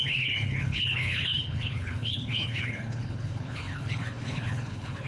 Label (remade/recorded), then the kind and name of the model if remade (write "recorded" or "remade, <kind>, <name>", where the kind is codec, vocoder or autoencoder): remade, codec, HILCodec